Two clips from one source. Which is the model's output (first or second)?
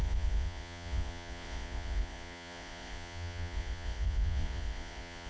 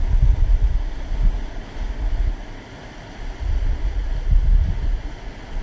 first